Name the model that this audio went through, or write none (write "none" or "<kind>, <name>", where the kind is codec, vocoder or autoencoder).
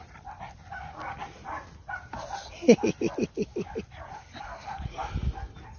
none